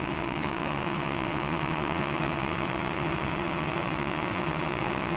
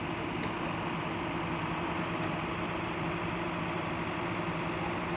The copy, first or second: first